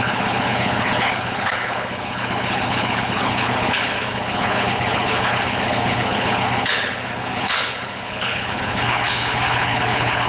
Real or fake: fake